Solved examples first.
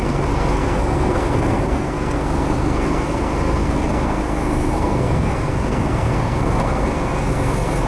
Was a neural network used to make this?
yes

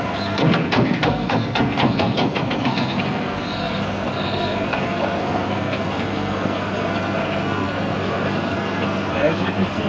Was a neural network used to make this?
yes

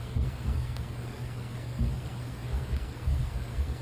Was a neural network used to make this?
yes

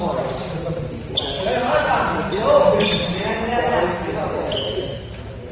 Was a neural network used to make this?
no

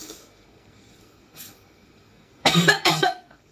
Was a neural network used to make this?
yes